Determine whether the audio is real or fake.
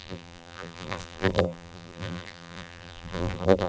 fake